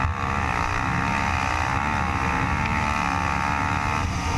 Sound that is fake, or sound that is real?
real